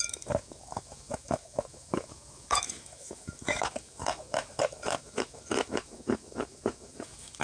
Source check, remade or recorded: remade